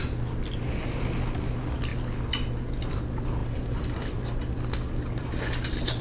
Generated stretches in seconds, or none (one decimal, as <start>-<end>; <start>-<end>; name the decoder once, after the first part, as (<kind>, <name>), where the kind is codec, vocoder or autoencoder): 3.4-4.2 (vocoder, BigVGAN v2)